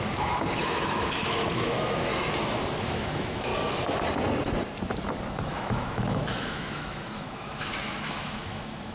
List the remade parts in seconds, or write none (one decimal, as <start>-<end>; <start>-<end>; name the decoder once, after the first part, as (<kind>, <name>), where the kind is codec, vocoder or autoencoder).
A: 0.0-2.1 (autoencoder, DAC-VAE); 2.7-3.5; 5.4-8.9